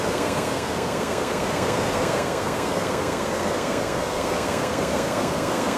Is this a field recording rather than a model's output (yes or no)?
no